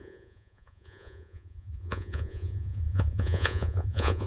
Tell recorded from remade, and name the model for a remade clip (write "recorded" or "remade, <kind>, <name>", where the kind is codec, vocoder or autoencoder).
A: remade, vocoder, Vocos